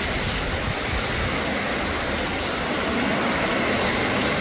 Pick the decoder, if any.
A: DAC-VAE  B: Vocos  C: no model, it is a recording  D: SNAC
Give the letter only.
C